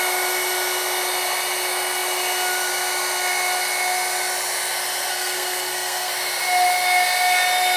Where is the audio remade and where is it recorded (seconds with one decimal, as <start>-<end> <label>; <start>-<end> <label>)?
0.0-5.1 recorded; 5.1-6.1 remade; 6.1-7.8 recorded